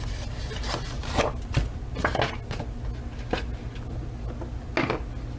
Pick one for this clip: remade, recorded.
recorded